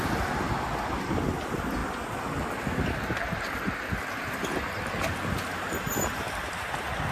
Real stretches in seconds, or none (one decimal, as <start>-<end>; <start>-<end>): 0.0-7.1